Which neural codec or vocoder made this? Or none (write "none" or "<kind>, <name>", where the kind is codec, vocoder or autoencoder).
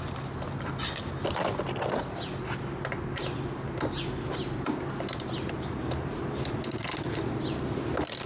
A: none